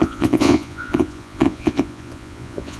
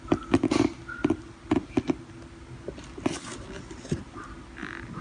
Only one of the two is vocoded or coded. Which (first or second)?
first